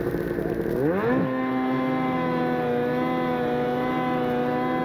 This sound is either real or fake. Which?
real